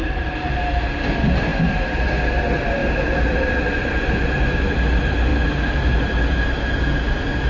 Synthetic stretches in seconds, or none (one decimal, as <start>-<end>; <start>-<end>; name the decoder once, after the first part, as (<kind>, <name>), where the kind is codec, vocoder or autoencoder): 0.0-1.0 (vocoder, BigVGAN v2); 2.8-4.7; 5.3-6.6